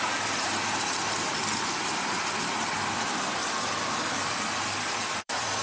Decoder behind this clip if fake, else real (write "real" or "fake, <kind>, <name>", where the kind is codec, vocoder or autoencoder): fake, vocoder, BigVGAN v2